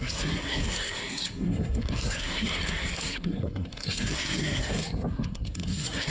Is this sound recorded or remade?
remade